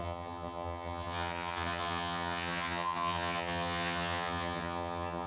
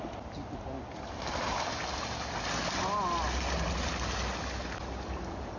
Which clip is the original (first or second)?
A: second